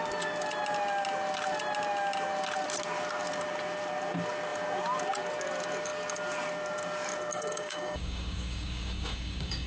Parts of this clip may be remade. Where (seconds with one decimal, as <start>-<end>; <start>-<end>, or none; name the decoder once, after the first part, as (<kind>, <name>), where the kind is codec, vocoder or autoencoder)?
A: 7.3-9.7 (codec, DAC)